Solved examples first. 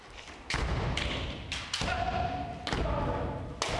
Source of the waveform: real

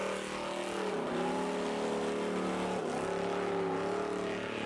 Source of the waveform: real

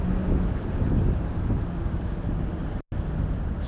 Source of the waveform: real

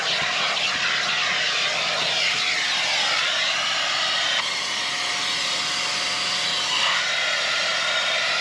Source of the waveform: fake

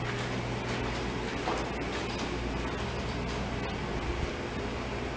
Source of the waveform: real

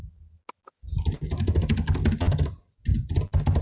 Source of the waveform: real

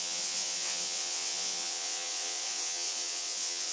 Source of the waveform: fake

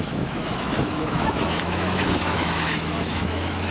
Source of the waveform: fake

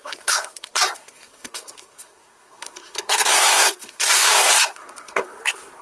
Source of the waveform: fake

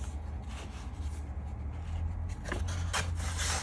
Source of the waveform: real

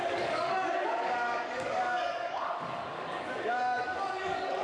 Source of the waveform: fake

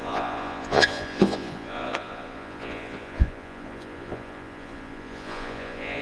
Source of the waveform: fake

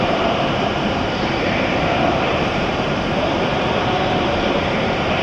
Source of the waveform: fake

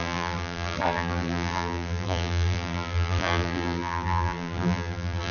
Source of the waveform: fake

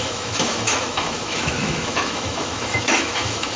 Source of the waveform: fake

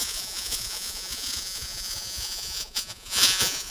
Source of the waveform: fake